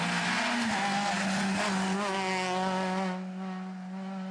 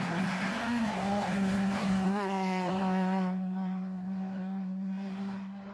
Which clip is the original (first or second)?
first